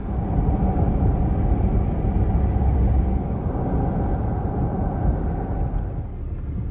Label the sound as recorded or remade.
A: recorded